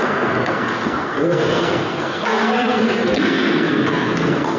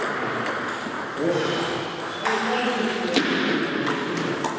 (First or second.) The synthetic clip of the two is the first